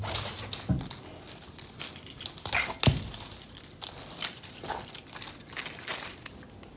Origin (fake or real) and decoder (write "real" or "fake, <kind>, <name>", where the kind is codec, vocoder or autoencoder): real